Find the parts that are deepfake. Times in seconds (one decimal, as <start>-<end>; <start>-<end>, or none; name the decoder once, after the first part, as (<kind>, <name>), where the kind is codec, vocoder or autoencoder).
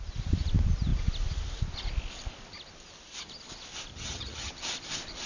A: 3.9-4.5 (vocoder, HiFi-GAN)